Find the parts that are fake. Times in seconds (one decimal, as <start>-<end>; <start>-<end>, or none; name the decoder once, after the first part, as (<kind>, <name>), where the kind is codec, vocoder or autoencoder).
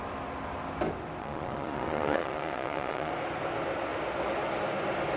1.2-3.1 (vocoder, Vocos)